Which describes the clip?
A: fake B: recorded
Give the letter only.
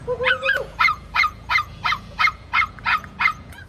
A